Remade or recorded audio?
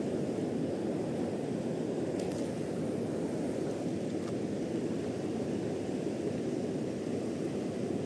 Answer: recorded